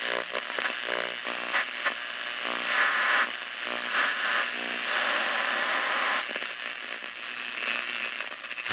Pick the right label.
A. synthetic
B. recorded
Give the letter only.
B